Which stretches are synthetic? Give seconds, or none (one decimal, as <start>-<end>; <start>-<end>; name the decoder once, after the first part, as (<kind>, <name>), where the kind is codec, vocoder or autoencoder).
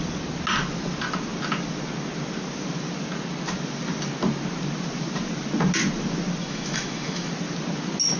6.4-7.3 (autoencoder, DAC-VAE)